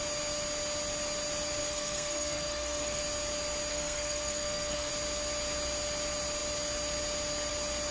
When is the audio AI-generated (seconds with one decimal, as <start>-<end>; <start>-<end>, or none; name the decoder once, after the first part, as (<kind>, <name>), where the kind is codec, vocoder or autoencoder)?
1.6-3.0 (codec, SNAC); 3.7-4.9